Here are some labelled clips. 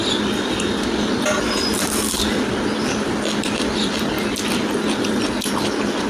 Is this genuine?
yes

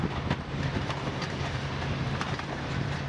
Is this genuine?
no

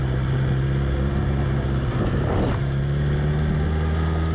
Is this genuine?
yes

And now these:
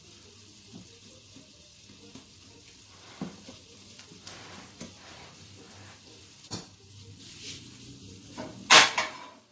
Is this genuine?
no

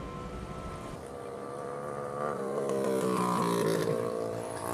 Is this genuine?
no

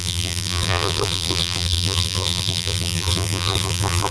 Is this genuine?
no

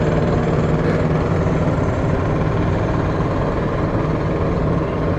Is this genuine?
yes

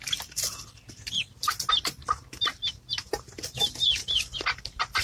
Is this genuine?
yes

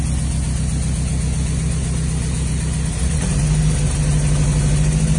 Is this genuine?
yes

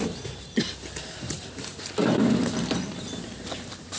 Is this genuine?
yes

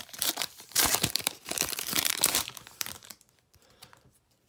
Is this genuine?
no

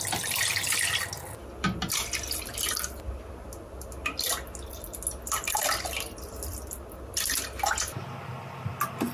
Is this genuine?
yes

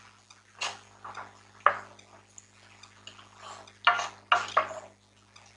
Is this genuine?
yes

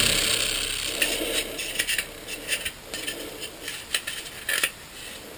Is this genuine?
yes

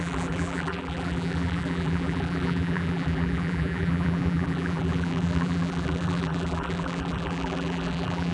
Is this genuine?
no